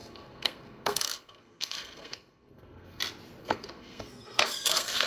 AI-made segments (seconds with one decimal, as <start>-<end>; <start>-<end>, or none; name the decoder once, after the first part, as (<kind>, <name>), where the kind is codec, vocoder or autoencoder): 0.0-3.0 (codec, SNAC); 3.4-5.1